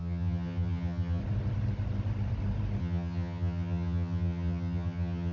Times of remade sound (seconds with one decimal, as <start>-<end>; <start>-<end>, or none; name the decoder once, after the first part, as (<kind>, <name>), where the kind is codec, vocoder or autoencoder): 0.0-1.2 (vocoder, HiFi-GAN); 2.8-5.3

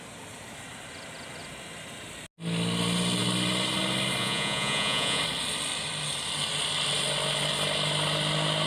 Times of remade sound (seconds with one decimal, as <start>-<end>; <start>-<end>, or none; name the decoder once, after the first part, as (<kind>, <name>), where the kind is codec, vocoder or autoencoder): 4.2-5.2 (vocoder, Vocos)

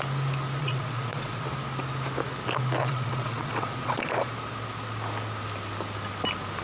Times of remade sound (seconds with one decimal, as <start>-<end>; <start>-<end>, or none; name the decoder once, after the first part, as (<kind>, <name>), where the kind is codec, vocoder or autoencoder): 0.6-1.4 (vocoder, Vocos); 2.8-4.3

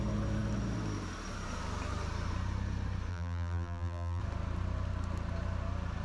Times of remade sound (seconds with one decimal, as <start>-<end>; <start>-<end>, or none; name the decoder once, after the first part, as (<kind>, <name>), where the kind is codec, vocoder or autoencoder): 3.1-4.2 (vocoder, BigVGAN v2)

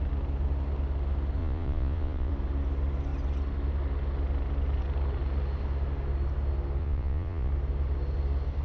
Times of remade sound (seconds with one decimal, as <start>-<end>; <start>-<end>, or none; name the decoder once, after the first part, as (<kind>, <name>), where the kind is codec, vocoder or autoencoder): 1.4-2.3 (vocoder, Vocos); 6.8-7.5

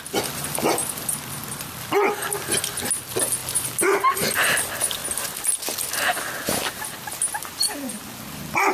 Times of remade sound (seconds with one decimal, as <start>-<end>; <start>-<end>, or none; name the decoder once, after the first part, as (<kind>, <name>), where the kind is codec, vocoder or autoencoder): none